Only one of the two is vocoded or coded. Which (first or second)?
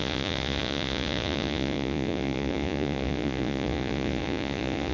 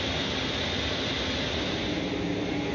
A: first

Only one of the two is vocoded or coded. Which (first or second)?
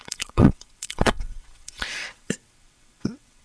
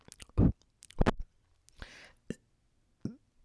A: first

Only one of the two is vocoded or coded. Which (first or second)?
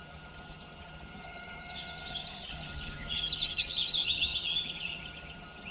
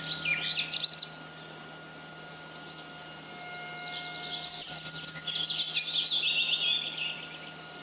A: first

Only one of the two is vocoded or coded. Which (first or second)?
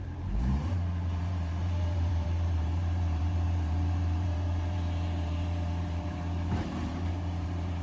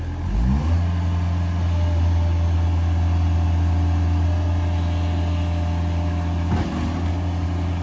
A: first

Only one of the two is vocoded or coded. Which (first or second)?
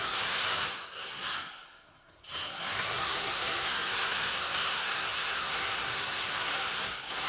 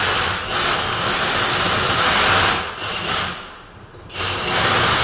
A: first